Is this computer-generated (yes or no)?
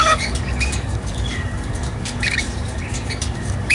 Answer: yes